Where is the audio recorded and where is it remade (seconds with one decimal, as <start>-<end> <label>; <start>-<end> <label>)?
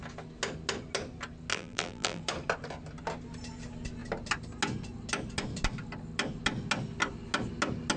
0.0-1.5 recorded; 1.5-2.2 remade; 2.2-8.0 recorded